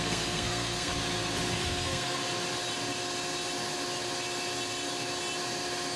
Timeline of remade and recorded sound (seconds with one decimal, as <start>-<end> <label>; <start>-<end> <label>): 0.0-0.9 remade; 0.9-1.6 recorded; 1.6-2.2 remade; 2.2-6.0 recorded